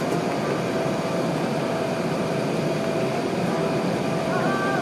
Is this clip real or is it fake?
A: real